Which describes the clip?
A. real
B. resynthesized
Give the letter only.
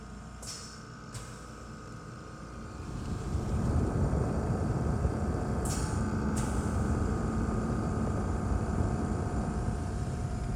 B